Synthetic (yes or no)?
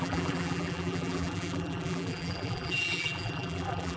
yes